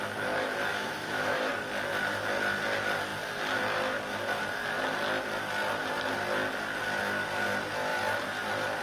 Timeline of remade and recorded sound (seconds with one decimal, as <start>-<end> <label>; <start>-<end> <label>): 0.0-0.7 recorded; 0.7-1.5 remade; 1.5-8.8 recorded